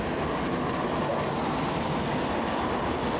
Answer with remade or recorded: recorded